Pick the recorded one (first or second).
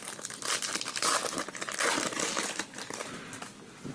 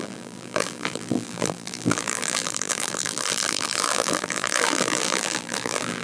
first